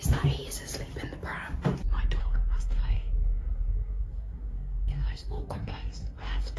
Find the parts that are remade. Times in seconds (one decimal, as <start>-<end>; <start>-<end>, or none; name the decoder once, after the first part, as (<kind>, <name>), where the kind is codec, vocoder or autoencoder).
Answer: 2.2-6.6 (codec, SNAC)